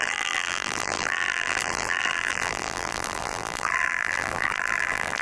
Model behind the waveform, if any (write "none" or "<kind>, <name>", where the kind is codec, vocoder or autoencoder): vocoder, BigVGAN v2